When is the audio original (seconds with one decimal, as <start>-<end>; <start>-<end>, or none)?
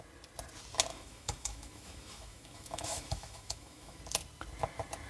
0.0-0.9; 4.0-5.1